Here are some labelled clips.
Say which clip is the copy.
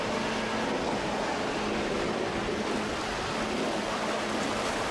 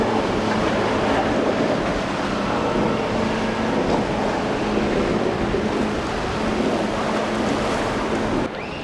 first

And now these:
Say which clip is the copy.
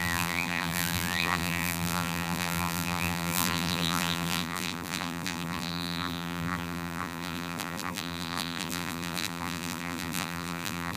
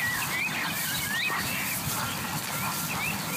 first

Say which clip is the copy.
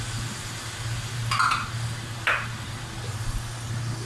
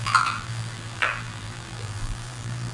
second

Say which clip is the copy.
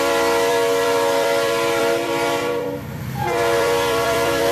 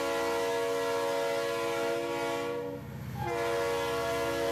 first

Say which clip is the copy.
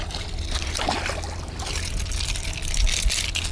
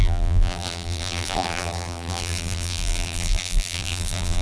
second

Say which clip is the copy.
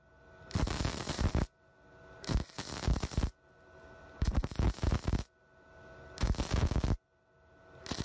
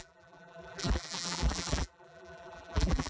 second